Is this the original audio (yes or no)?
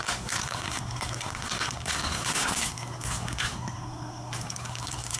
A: no